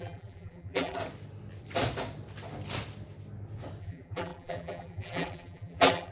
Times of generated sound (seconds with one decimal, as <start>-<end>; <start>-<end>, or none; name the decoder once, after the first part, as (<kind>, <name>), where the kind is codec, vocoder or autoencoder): 0.0-1.0 (vocoder, BigVGAN v2); 3.8-6.1